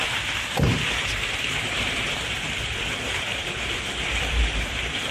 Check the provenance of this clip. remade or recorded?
remade